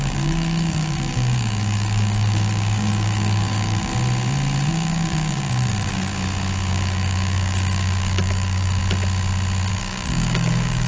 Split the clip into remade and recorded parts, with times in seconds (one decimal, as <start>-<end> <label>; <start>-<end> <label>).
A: 0.0-3.9 remade; 3.9-4.7 recorded; 4.7-6.1 remade; 6.1-6.7 recorded; 6.7-8.8 remade; 8.8-9.7 recorded; 9.7-10.9 remade